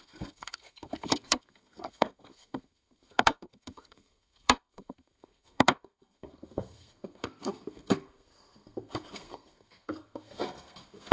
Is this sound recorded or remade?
remade